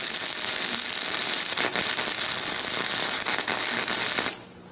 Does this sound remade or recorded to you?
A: recorded